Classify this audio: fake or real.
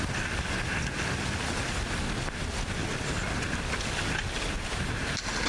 real